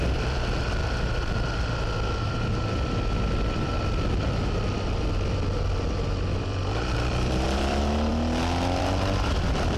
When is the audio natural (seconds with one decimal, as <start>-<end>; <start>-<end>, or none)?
0.8-2.1; 3.7-6.4; 8.1-8.8